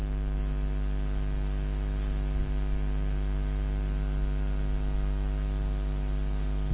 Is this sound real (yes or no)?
yes